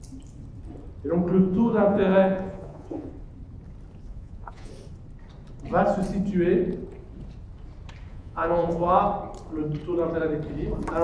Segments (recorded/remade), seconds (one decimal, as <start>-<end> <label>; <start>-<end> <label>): 0.0-1.3 recorded; 1.3-3.1 remade; 3.1-4.1 recorded; 4.1-4.7 remade; 4.7-8.1 recorded; 8.1-9.0 remade; 9.0-11.0 recorded